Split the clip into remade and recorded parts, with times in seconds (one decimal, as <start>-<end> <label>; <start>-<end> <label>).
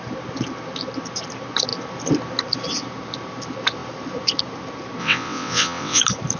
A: 0.0-5.0 recorded; 5.0-6.0 remade; 6.0-6.4 recorded